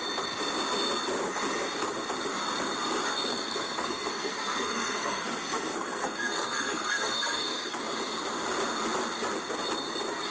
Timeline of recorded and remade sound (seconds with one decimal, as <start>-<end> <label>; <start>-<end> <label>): 0.0-3.3 recorded; 3.3-7.8 remade; 7.8-10.3 recorded